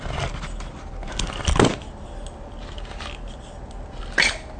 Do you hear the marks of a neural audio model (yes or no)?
no